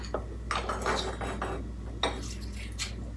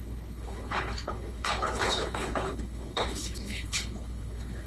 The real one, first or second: first